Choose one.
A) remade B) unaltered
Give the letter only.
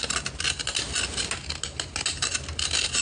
B